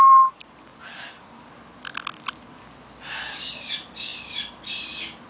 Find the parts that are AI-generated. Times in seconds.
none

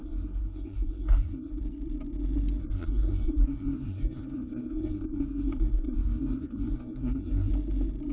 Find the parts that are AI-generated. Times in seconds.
0.0-1.6 (codec, SNAC); 2.6-7.5

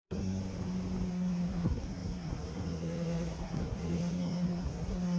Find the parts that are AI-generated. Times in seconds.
0.0-0.4 (codec, SNAC); 1.1-5.2